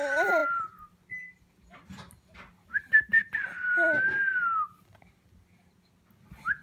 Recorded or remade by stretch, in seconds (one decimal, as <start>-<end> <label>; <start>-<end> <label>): 0.0-6.6 recorded